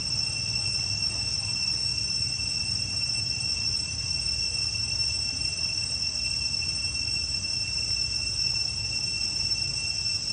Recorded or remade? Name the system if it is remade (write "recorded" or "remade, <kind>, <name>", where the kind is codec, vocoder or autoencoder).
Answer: recorded